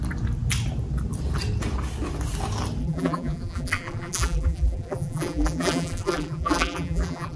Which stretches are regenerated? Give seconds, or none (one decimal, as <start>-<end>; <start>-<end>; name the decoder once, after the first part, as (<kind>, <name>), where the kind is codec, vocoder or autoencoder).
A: 2.8-7.4 (vocoder, BigVGAN v2)